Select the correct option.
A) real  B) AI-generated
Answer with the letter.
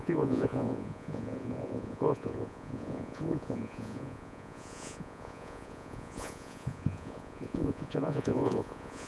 B